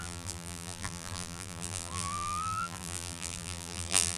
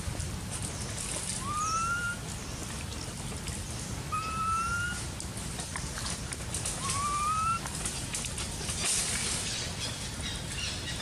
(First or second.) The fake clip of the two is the first